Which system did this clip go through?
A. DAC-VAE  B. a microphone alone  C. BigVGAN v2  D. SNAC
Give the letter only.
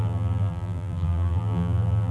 C